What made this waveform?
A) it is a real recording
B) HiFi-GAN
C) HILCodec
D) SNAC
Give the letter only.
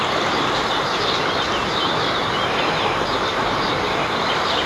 A